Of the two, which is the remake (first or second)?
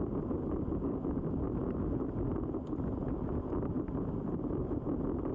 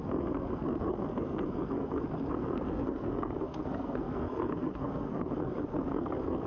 second